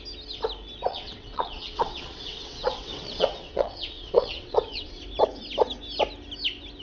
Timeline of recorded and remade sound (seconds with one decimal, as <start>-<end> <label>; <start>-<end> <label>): 0.0-0.9 recorded; 0.9-5.0 remade; 5.0-6.8 recorded